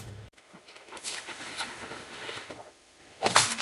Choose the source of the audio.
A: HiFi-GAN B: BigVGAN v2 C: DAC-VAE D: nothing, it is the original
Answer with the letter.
C